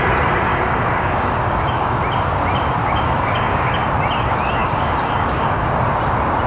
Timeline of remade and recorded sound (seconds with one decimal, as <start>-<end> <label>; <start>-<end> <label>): 0.0-0.5 recorded; 0.5-2.0 remade; 2.0-2.8 recorded; 2.8-3.8 remade; 3.8-4.6 recorded; 4.6-5.8 remade; 5.8-6.5 recorded